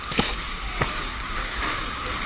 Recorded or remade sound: remade